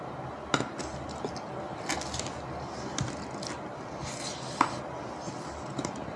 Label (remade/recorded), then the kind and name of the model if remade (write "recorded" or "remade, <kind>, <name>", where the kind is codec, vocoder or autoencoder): recorded